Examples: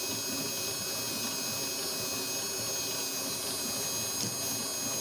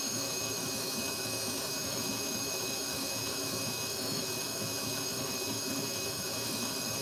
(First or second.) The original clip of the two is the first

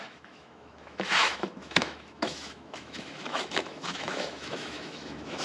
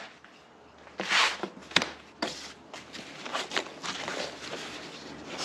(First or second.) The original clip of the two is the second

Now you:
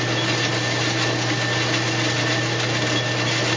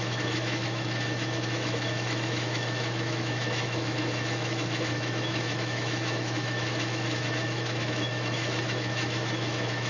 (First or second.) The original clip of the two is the first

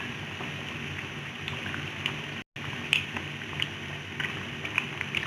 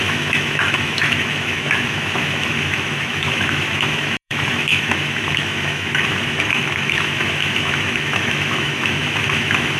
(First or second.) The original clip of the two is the first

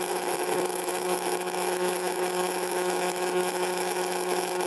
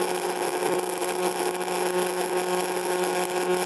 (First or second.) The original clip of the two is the second